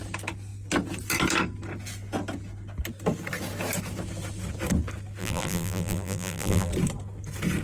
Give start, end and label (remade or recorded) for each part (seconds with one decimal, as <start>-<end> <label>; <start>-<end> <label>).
0.0-5.2 recorded; 5.2-6.7 remade; 6.7-7.6 recorded